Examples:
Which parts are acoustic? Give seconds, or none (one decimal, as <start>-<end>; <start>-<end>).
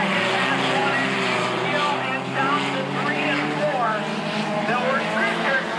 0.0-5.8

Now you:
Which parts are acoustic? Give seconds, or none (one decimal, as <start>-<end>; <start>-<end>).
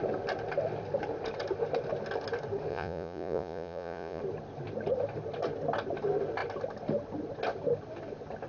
0.0-2.7; 4.2-8.5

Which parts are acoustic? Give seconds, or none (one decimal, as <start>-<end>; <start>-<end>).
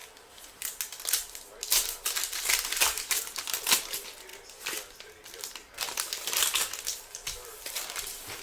0.0-3.2; 4.3-7.0